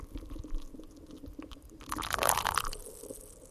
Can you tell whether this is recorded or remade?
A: recorded